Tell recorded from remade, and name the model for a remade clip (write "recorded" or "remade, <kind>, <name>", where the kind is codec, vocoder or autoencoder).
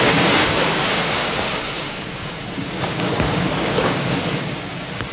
remade, codec, DAC